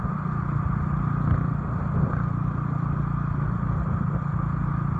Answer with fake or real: real